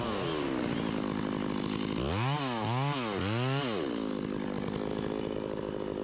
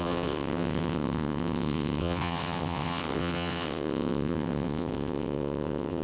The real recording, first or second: first